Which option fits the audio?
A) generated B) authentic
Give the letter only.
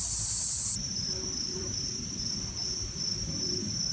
A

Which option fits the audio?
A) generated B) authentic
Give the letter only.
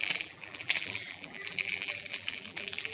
A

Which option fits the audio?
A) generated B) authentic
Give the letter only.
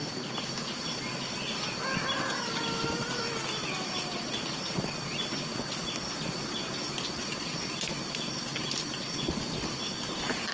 A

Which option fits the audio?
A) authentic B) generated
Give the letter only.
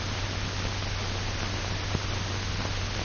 A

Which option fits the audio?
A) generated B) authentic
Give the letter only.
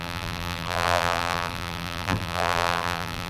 A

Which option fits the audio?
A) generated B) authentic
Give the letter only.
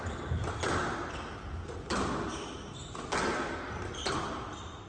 B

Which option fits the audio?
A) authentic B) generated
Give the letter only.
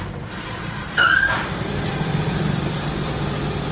B